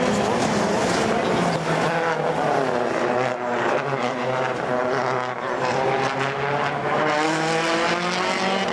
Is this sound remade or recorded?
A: recorded